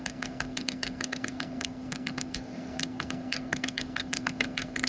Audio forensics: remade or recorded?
remade